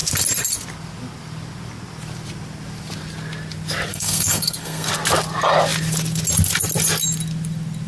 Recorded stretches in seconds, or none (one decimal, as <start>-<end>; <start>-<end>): 0.0-3.9; 4.9-7.9